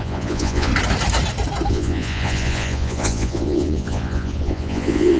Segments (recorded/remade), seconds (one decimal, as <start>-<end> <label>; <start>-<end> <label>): 0.0-0.7 remade; 0.7-1.7 recorded; 1.7-5.2 remade